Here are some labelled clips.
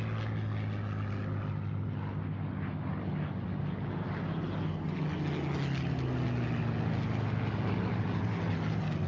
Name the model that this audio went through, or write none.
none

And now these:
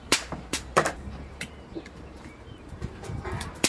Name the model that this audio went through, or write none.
vocoder, BigVGAN v2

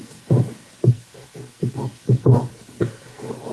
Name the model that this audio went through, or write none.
codec, SNAC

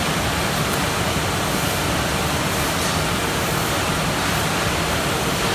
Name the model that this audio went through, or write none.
none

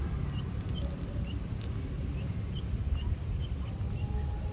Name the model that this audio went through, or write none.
none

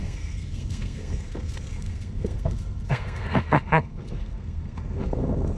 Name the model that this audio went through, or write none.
codec, SNAC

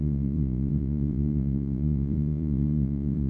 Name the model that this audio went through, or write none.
vocoder, Vocos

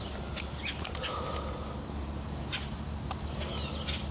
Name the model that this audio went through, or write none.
none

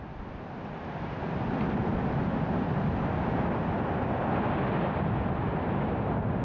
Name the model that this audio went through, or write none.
none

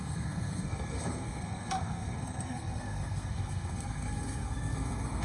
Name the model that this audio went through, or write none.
codec, SNAC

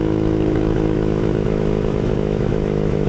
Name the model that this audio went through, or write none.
autoencoder, DAC-VAE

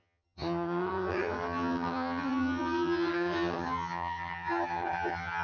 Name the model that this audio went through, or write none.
vocoder, HiFi-GAN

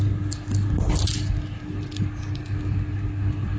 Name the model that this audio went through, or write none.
none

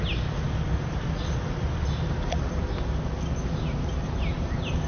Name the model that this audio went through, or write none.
none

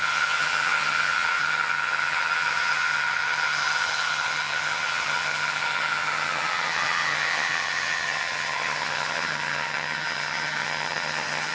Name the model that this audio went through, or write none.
vocoder, HiFi-GAN